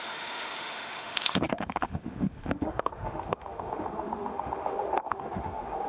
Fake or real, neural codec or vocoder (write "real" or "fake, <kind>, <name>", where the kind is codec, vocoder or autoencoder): fake, autoencoder, DAC-VAE